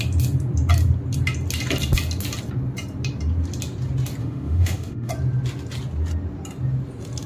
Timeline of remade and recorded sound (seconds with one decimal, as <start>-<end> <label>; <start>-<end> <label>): 0.0-4.2 recorded; 4.2-5.1 remade; 5.1-7.3 recorded